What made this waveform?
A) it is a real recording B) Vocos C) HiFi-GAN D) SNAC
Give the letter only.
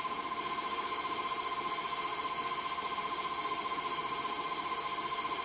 A